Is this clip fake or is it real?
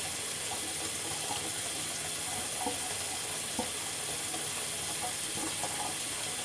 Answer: real